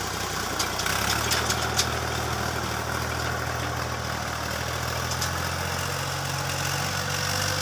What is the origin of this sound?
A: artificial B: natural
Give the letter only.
B